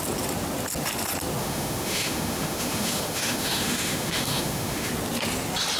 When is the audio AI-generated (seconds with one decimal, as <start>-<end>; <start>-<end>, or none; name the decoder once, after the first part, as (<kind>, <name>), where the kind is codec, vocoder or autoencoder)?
1.4-4.9 (autoencoder, DAC-VAE)